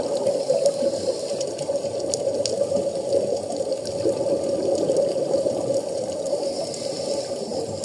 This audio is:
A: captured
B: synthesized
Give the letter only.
A